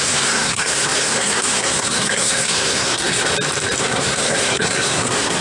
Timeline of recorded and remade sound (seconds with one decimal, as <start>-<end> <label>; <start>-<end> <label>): 0.0-3.3 remade; 3.3-3.8 recorded; 3.8-5.4 remade